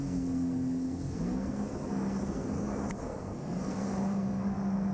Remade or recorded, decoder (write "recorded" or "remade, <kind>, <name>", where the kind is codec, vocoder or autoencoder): remade, codec, SNAC